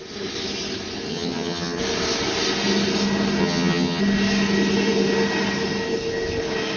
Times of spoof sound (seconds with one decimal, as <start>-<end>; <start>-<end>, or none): 1.1-1.8; 3.4-4.0